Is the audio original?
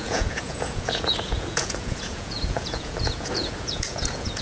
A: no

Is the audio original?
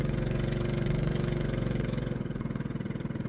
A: no